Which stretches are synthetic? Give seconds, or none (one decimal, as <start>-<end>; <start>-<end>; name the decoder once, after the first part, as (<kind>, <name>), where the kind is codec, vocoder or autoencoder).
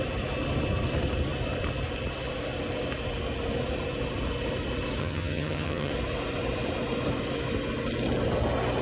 5.0-5.9 (vocoder, HiFi-GAN)